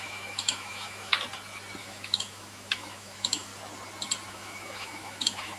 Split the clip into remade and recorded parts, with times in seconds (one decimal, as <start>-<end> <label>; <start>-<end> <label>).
0.0-1.1 remade; 1.1-1.8 recorded; 1.8-3.5 remade; 3.5-4.3 recorded; 4.3-5.6 remade